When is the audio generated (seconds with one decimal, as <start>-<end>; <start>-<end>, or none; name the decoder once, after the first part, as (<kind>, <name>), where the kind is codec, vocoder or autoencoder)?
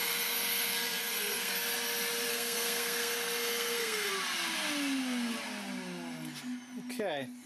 0.0-1.5 (codec, SNAC); 2.3-4.1